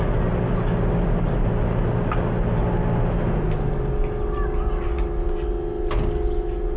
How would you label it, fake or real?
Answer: real